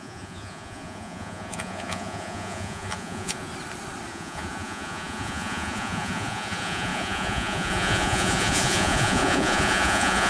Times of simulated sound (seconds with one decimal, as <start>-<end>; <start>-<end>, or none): 0.0-3.5; 4.1-10.3

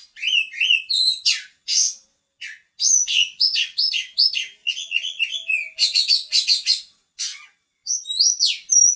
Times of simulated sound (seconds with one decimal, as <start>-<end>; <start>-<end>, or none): 3.2-3.9; 4.6-5.2

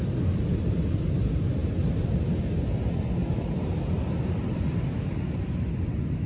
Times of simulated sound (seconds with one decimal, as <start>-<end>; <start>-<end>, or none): none

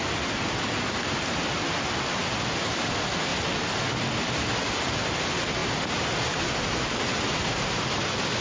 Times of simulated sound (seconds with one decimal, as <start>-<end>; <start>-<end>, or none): none

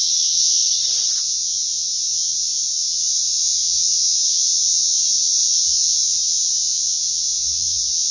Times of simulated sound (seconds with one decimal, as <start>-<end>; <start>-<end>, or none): 0.0-0.6; 1.2-8.1

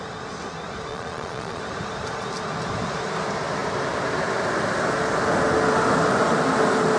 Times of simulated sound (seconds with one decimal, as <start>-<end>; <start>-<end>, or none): 0.9-1.6

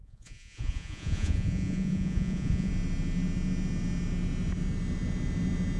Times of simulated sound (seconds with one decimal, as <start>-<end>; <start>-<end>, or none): 0.0-2.7